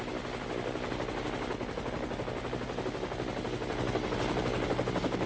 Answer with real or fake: real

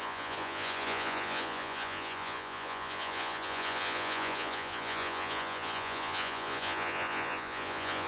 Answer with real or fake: fake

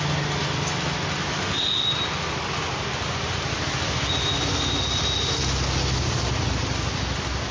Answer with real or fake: real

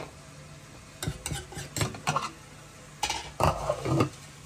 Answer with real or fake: real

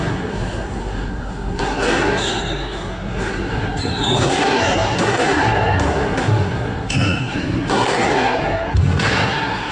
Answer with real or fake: fake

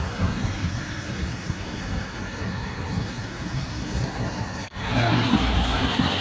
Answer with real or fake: fake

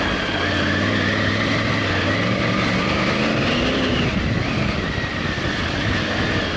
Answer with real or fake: real